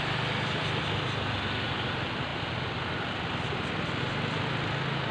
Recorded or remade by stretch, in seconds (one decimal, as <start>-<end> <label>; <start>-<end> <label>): 0.0-5.1 recorded